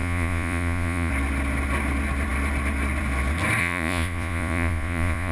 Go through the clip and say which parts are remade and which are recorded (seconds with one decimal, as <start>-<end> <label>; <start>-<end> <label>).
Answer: 0.0-1.1 remade; 1.1-3.6 recorded; 3.6-5.3 remade